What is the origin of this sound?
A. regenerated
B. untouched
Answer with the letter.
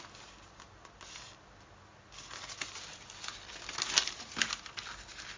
B